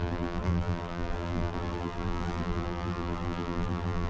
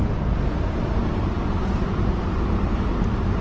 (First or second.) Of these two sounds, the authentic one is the second